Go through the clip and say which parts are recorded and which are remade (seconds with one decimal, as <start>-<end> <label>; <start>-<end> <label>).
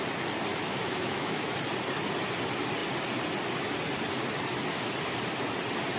0.0-0.5 recorded; 0.5-1.5 remade; 1.5-6.0 recorded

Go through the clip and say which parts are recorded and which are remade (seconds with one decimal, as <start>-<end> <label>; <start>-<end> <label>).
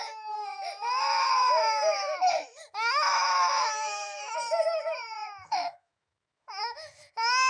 0.0-7.5 remade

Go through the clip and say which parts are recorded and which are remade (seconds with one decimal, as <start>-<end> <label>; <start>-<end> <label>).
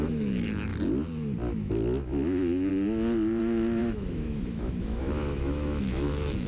0.0-0.7 remade; 0.7-1.5 recorded; 1.5-2.7 remade; 2.7-3.4 recorded; 3.4-6.5 remade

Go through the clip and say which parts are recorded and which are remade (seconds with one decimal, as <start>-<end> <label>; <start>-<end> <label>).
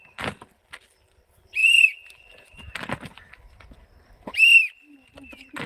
0.0-5.7 recorded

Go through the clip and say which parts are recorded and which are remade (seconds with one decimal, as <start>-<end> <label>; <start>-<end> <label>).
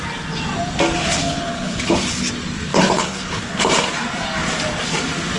0.0-1.0 recorded; 1.0-2.3 remade; 2.3-2.7 recorded; 2.7-3.7 remade; 3.7-5.4 recorded